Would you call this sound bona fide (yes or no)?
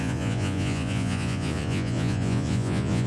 no